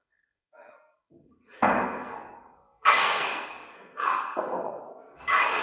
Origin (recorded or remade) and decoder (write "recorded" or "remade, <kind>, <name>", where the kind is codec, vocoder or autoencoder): remade, codec, SNAC